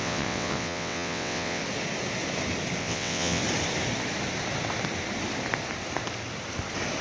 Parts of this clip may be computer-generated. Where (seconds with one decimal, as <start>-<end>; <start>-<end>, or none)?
0.0-1.6; 2.8-3.4